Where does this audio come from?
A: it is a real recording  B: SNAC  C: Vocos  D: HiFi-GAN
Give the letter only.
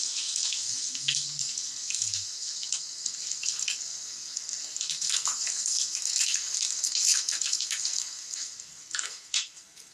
B